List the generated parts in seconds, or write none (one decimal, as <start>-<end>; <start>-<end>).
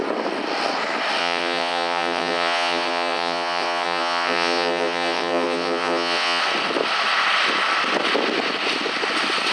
1.2-6.4